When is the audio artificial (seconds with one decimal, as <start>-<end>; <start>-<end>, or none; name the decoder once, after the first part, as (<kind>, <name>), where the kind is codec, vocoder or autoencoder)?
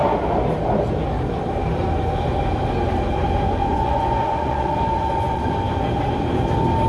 3.6-5.5 (vocoder, Vocos)